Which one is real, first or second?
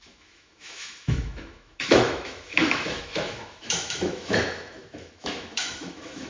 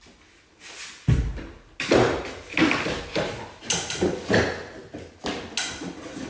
second